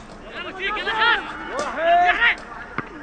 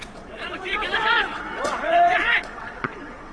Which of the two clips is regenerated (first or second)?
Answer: second